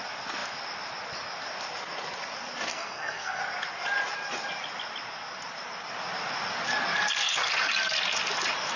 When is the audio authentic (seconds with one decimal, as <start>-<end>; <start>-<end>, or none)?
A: 0.0-2.7; 3.4-8.8